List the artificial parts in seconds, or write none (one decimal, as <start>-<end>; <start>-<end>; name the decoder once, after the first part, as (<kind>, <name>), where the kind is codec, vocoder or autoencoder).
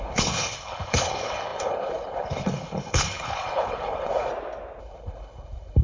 0.0-4.3 (codec, HILCodec); 4.8-5.8